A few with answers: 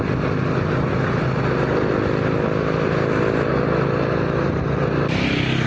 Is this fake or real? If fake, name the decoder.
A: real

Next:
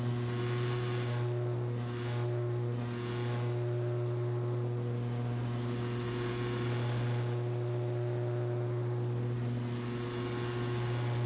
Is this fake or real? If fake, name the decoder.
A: real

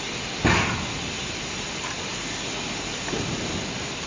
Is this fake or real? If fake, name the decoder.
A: real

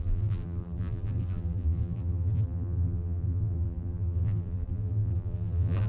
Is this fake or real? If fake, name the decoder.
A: fake, vocoder, BigVGAN v2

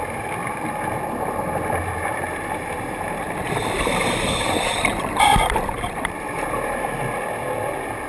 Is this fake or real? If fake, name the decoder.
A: fake, vocoder, BigVGAN v2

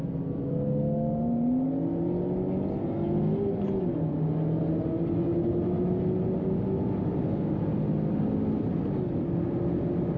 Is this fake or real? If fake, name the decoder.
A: real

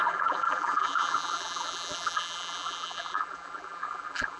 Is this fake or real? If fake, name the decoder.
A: fake, vocoder, BigVGAN v2